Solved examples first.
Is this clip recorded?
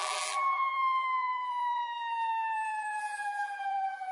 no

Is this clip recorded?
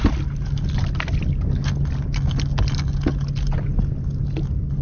yes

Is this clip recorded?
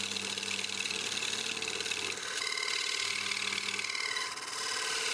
yes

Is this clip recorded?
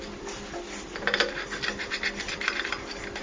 no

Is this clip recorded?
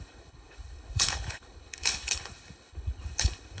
no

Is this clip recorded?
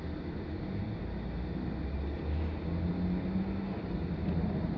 yes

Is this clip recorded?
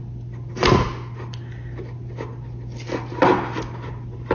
yes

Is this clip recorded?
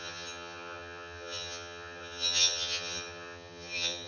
no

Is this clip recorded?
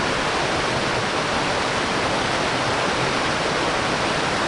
yes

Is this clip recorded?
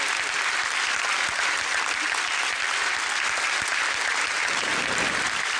yes